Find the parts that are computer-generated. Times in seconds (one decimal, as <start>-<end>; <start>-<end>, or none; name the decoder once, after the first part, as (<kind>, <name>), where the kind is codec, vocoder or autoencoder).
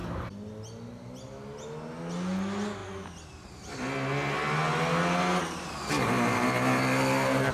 none